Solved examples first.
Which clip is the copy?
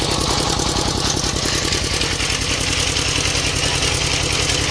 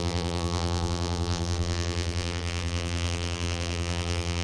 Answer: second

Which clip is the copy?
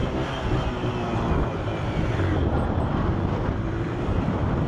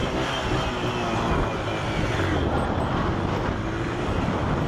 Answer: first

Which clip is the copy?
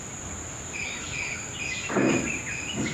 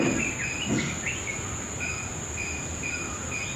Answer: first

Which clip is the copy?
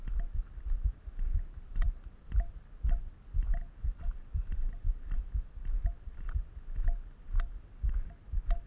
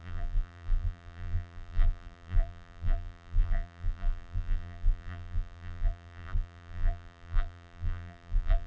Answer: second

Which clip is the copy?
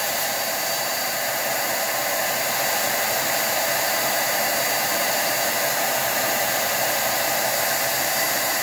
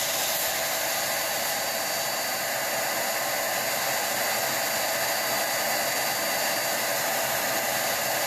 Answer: first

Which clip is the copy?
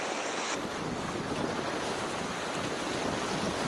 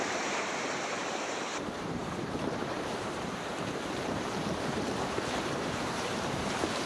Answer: second